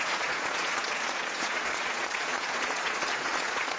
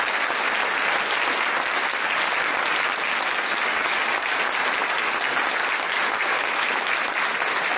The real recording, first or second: second